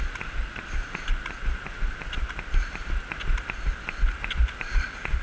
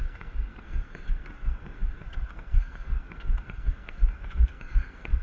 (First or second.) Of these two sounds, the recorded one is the first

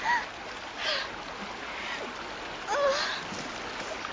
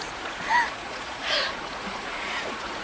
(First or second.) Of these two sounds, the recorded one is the first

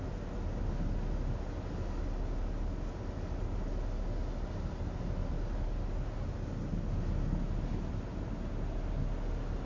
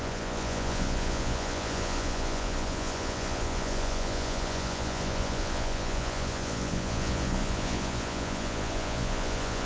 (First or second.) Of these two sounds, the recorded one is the first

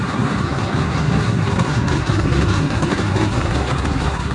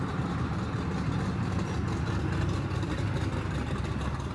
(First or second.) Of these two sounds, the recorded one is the second